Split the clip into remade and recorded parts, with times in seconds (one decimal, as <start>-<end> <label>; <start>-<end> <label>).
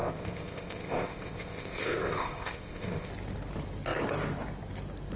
0.0-3.1 remade; 3.1-5.2 recorded